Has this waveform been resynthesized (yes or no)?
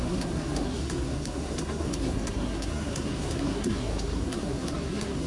yes